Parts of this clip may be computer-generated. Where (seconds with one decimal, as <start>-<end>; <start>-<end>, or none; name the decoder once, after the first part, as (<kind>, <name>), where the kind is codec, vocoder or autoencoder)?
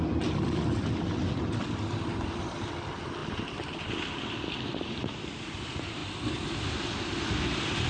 none